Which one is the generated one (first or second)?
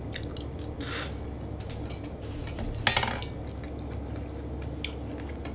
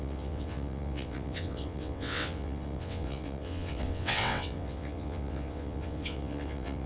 second